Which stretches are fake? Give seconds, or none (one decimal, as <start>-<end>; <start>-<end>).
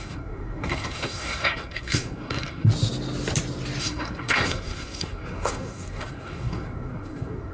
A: 0.0-2.7; 3.8-7.5